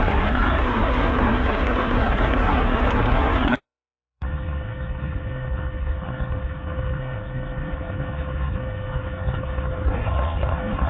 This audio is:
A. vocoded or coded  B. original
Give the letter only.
A